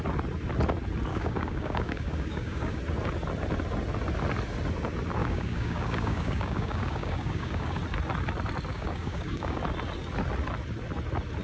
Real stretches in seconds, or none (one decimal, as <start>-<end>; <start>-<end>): 0.0-1.1; 2.8-5.2; 7.8-8.7; 9.6-11.4